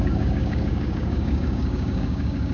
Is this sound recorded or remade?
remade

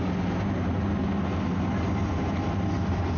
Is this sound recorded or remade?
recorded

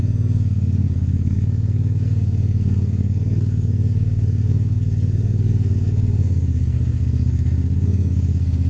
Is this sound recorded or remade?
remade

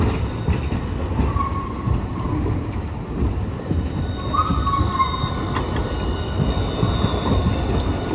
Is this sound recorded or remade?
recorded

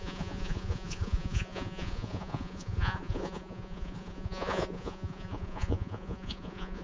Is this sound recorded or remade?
remade